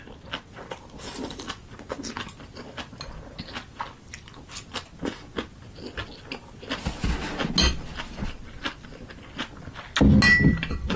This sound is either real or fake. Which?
real